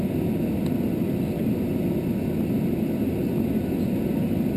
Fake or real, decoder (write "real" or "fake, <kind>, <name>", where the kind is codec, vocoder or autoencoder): real